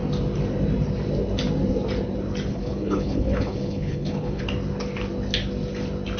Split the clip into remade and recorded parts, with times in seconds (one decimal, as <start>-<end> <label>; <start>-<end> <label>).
0.0-2.5 recorded; 2.5-4.4 remade; 4.4-6.2 recorded